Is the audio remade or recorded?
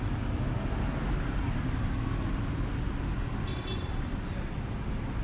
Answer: recorded